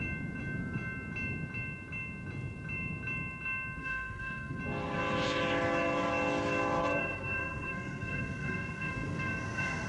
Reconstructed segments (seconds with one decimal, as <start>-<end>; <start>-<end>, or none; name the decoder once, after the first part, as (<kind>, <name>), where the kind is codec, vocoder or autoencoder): 3.8-4.6 (codec, SNAC); 7.0-9.9